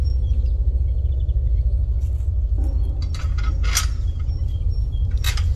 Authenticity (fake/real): real